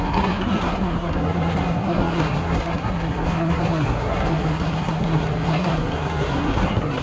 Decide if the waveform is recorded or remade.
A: remade